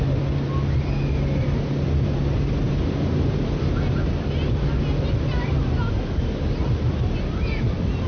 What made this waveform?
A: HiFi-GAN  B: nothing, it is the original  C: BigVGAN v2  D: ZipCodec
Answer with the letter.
B